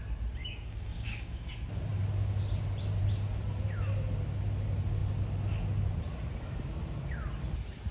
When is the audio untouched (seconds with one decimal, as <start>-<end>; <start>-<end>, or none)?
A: 0.0-0.4; 1.5-7.9